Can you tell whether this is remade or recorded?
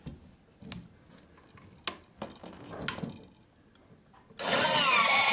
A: recorded